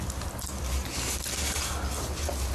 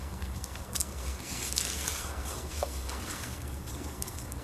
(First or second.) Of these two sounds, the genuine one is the first